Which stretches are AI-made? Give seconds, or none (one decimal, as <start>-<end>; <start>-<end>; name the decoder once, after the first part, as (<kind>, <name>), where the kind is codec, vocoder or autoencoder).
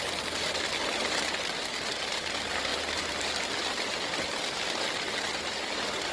0.0-1.0 (vocoder, BigVGAN v2); 2.1-2.7; 3.7-6.1